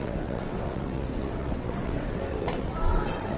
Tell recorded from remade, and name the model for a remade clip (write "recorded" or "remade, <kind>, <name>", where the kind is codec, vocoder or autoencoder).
remade, vocoder, WaveNeXt